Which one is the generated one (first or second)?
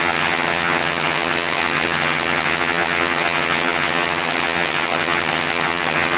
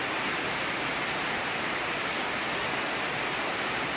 first